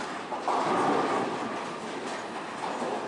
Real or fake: real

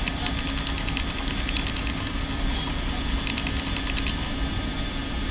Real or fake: real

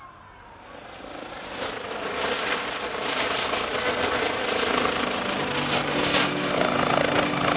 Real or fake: real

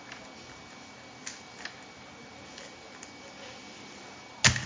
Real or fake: real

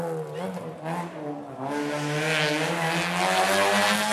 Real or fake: real